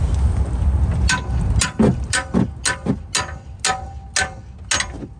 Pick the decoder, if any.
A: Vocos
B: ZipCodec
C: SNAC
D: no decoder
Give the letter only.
D